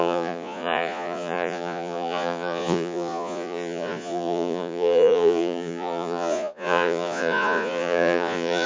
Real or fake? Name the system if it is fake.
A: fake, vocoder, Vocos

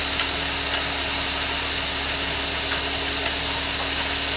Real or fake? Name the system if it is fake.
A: real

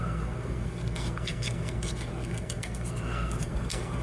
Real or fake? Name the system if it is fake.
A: fake, codec, SNAC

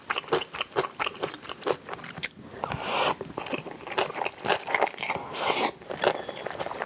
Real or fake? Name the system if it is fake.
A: real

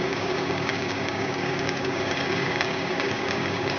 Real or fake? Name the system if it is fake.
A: fake, codec, DAC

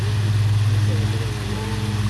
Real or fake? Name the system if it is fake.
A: real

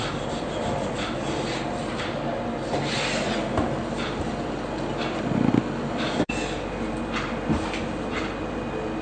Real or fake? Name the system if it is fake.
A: real